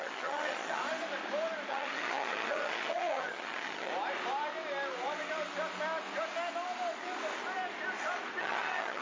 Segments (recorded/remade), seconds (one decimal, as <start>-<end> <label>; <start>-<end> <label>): 0.0-0.8 remade; 0.8-1.7 recorded; 1.7-3.9 remade; 3.9-8.4 recorded; 8.4-9.0 remade